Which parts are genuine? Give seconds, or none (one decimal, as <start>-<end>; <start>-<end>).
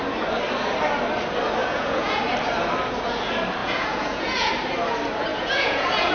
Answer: 0.0-1.6; 2.2-3.6; 4.5-5.3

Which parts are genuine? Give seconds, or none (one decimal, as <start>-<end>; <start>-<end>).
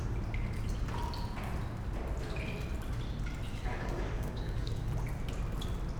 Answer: 0.0-3.5; 4.9-6.0